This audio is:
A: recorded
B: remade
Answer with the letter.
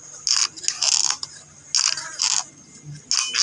A